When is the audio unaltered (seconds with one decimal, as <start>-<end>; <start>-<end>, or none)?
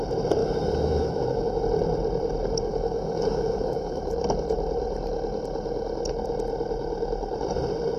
0.0-0.4; 1.6-2.7; 4.0-8.0